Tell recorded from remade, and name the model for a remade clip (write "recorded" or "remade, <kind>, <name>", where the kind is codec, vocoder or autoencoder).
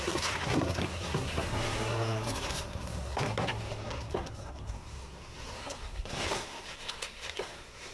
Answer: remade, codec, SNAC